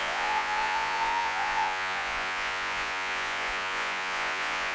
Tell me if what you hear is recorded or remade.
remade